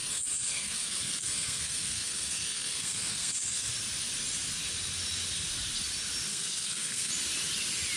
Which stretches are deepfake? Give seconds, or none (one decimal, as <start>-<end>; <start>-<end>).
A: 0.0-3.7; 6.3-7.1